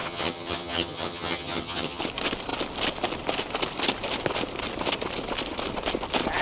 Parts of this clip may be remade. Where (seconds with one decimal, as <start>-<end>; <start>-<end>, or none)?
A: 0.0-2.0